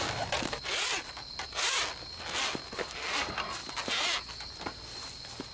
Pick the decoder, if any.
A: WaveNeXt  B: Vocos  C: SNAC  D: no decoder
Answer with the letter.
D